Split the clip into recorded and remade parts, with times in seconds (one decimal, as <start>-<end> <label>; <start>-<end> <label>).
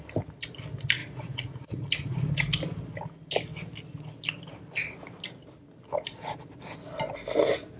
0.0-1.0 recorded; 1.0-2.3 remade; 2.3-7.8 recorded